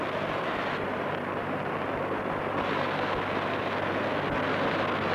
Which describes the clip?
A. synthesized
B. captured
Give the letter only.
B